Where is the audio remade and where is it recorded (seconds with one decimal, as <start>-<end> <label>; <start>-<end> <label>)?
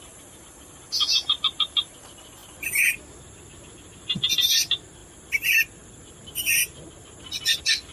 0.0-7.9 recorded